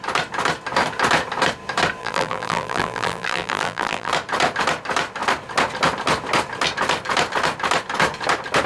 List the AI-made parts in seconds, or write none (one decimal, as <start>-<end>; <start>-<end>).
2.0-4.1